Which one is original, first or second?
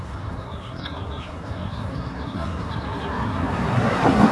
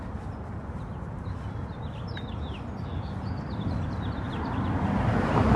second